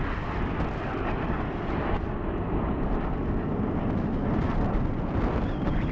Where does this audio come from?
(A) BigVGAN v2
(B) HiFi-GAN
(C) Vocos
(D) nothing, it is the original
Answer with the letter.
D